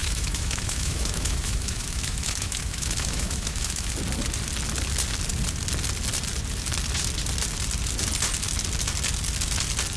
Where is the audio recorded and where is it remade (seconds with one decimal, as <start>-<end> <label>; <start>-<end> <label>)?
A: 0.0-3.9 remade; 3.9-10.0 recorded